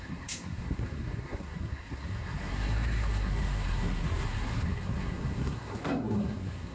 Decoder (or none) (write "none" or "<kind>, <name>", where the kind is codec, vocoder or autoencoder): codec, SNAC